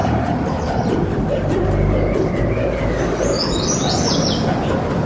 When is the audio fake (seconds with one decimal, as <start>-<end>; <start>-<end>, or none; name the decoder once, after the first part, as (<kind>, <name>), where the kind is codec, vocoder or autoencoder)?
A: 0.0-1.2 (vocoder, BigVGAN v2)